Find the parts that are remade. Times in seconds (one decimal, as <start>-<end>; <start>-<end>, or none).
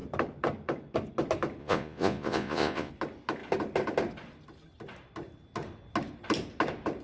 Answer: 1.6-2.9